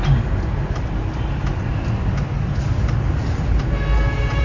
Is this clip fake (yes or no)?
no